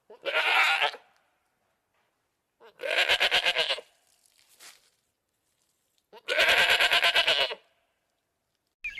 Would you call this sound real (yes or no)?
yes